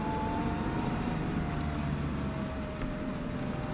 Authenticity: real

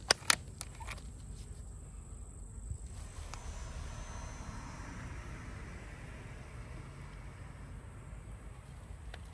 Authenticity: real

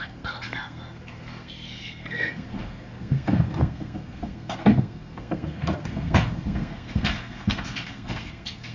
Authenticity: fake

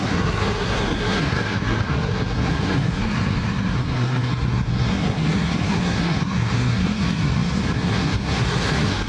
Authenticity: fake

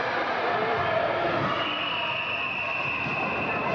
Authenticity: real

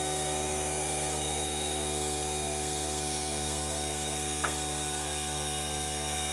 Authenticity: fake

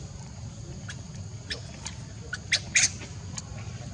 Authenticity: real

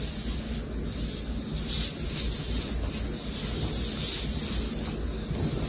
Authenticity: real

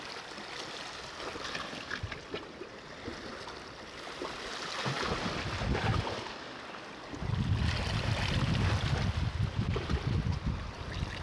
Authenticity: real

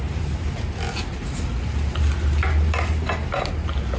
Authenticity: real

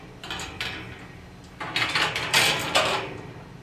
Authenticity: real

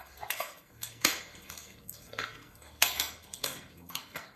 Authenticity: fake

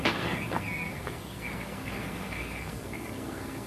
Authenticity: fake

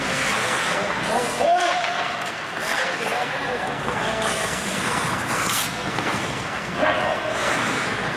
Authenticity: fake